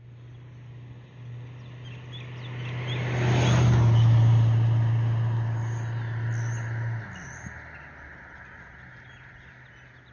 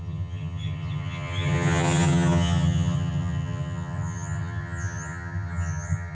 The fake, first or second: second